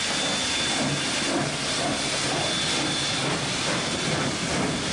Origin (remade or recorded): recorded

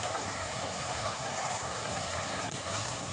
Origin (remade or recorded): remade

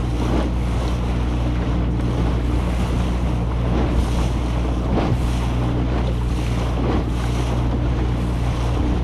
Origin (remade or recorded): recorded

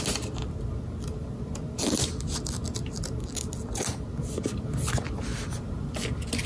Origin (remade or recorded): recorded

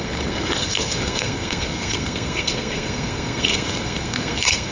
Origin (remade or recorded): remade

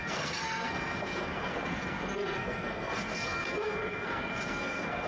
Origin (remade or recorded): remade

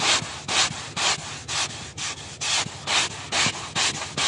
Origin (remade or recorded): recorded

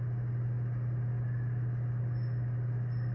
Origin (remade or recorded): recorded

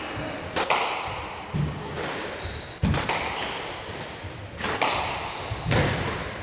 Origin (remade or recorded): recorded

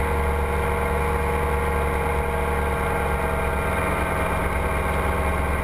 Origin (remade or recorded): recorded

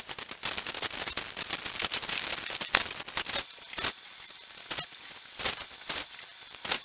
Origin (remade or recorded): recorded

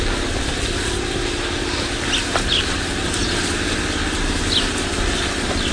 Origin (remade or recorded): recorded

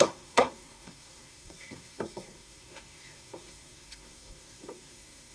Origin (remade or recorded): remade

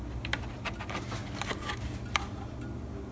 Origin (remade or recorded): recorded